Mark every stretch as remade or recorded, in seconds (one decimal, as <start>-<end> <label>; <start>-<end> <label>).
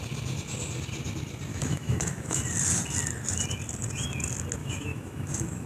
0.0-1.5 recorded; 1.5-2.4 remade; 2.4-4.6 recorded; 4.6-5.7 remade